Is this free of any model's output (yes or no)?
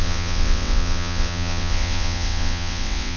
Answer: no